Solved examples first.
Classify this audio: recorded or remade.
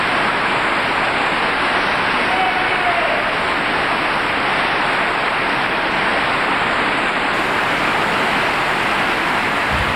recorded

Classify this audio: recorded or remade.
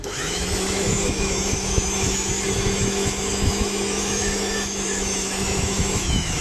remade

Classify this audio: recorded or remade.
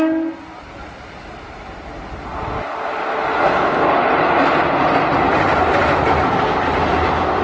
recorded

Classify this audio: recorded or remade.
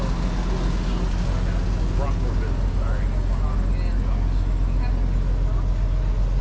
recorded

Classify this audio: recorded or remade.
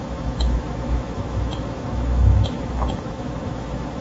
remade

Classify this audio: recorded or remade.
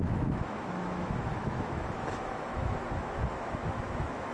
remade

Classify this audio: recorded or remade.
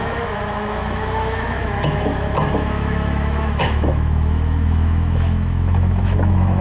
remade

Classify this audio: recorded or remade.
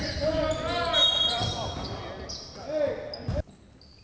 recorded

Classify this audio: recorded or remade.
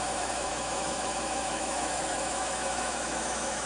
remade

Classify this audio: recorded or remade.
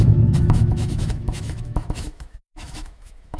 remade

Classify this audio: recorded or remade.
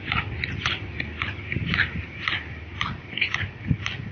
recorded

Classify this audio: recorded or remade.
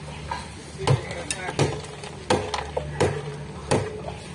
recorded